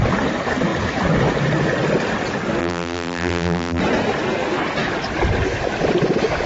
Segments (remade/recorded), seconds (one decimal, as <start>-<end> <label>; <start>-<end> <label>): 0.0-2.6 recorded; 2.6-3.8 remade; 3.8-6.5 recorded

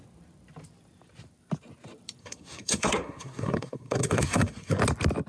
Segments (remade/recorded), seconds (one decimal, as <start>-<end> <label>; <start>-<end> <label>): 0.0-2.2 recorded; 2.2-4.8 remade; 4.8-5.3 recorded

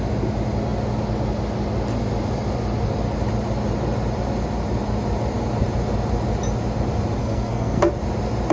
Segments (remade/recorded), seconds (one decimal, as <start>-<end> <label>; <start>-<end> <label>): 0.0-7.2 recorded; 7.2-7.9 remade; 7.9-8.5 recorded

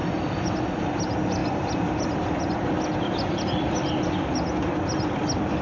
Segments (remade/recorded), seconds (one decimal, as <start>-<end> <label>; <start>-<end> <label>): 0.0-0.9 remade; 0.9-1.4 recorded; 1.4-4.3 remade; 4.3-5.6 recorded

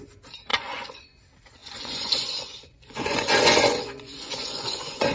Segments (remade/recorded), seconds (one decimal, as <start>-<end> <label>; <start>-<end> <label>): 0.0-0.5 recorded; 0.5-1.2 remade; 1.2-1.6 recorded; 1.6-5.1 remade

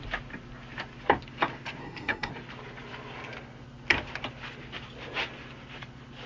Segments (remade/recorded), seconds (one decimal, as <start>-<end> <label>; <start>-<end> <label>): 0.0-1.8 recorded; 1.8-2.3 remade; 2.3-6.3 recorded

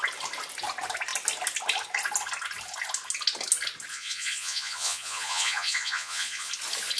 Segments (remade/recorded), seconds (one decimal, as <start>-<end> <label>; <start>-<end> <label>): 0.0-3.9 recorded; 3.9-6.5 remade; 6.5-7.0 recorded

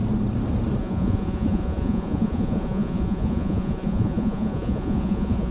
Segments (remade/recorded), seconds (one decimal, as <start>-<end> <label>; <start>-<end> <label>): 0.0-0.8 recorded; 0.8-5.5 remade